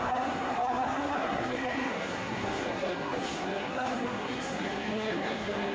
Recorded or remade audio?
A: remade